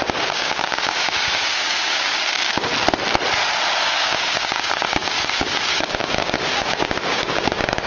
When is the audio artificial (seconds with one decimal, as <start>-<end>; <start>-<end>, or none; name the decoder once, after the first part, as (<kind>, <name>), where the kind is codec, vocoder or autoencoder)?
0.0-2.7 (codec, DAC); 3.8-7.9